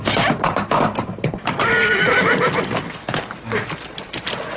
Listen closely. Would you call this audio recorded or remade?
recorded